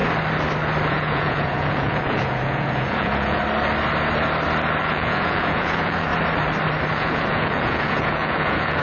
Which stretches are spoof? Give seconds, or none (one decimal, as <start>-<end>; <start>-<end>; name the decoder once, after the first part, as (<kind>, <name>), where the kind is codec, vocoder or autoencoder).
0.9-3.4 (vocoder, Vocos); 4.8-6.1; 6.9-8.8